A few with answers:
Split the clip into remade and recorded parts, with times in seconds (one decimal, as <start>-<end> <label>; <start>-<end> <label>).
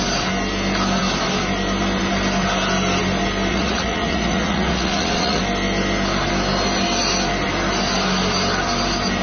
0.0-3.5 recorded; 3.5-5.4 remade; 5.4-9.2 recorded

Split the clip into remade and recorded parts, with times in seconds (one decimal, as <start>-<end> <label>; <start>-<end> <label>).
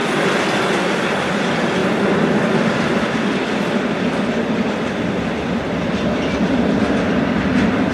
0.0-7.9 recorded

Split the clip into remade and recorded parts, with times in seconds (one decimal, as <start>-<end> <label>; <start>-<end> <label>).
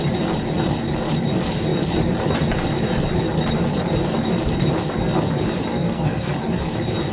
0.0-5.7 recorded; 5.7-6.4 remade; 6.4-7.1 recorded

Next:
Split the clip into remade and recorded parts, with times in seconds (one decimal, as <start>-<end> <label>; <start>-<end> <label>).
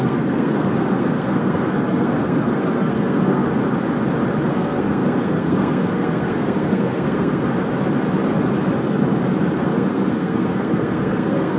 0.0-3.4 remade; 3.4-4.5 recorded; 4.5-7.4 remade; 7.4-9.6 recorded; 9.6-11.6 remade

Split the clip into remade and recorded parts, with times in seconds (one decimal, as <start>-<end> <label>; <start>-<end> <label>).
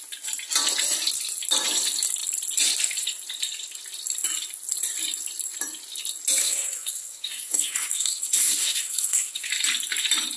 0.0-6.4 recorded; 6.4-9.5 remade; 9.5-10.4 recorded